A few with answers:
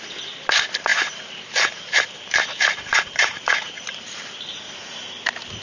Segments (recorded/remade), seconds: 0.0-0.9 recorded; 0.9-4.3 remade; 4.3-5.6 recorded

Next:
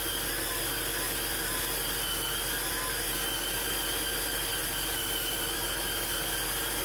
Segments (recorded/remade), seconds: 0.0-6.8 recorded

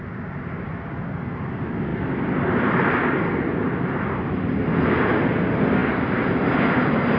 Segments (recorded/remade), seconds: 0.0-1.9 recorded; 1.9-4.0 remade; 4.0-7.2 recorded

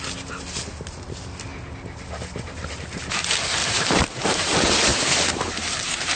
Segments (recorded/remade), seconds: 0.0-3.6 recorded; 3.6-4.5 remade; 4.5-4.9 recorded; 4.9-6.2 remade

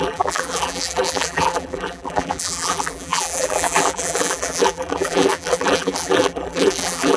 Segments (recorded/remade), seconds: 0.0-7.2 remade